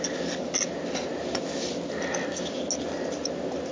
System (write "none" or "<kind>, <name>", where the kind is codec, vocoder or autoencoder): none